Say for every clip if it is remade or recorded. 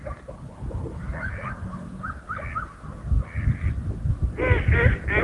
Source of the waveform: recorded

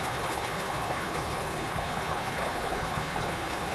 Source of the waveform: remade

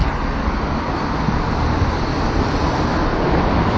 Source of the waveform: recorded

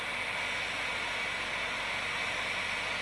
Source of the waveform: recorded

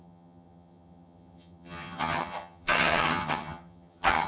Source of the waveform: remade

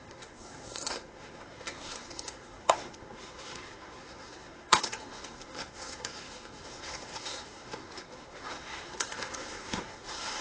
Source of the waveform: remade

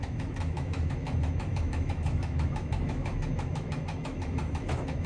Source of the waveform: remade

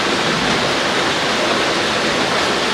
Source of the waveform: recorded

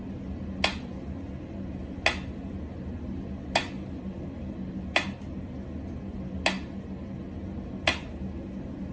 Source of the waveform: recorded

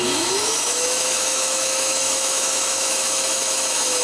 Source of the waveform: remade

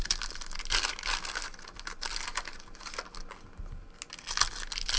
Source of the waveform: recorded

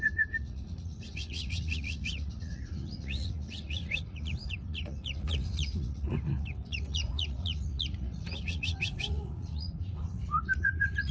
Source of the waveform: remade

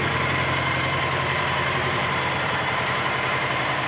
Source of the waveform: remade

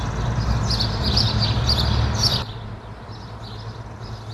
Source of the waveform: recorded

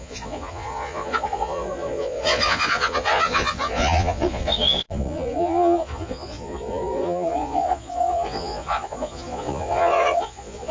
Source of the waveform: remade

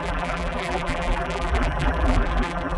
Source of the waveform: remade